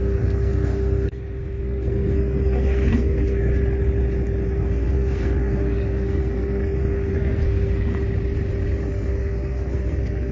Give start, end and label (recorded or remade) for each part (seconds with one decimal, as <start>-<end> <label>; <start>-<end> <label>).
0.0-3.5 remade; 3.5-4.5 recorded; 4.5-7.9 remade; 7.9-8.9 recorded; 8.9-10.3 remade